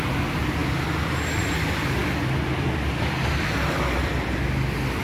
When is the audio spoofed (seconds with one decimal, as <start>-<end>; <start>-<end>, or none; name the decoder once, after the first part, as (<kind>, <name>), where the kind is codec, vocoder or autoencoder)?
none

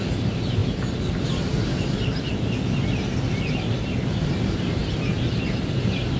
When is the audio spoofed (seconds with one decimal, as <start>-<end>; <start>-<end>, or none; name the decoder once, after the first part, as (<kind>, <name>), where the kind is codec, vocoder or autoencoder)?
none

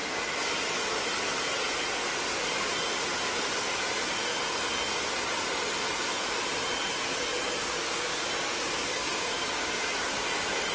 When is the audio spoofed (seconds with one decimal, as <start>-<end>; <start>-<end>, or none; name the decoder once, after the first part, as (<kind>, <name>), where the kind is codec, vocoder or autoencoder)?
7.6-9.8 (codec, DAC)